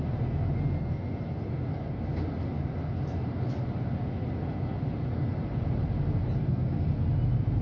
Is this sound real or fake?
real